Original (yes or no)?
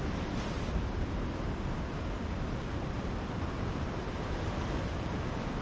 yes